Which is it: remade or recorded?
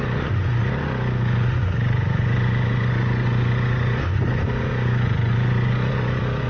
remade